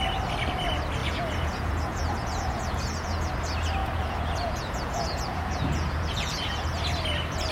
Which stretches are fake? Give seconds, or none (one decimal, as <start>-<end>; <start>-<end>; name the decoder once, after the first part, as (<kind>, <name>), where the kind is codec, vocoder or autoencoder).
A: 1.0-3.3 (vocoder, Vocos); 3.8-6.8